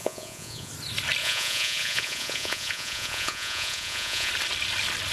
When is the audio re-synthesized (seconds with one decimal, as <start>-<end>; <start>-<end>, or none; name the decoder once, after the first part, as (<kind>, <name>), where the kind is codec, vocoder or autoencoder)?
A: 0.0-0.7 (vocoder, Vocos); 1.2-4.3